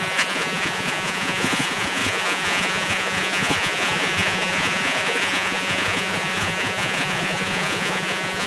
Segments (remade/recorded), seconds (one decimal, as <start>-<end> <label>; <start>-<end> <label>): 0.0-8.5 remade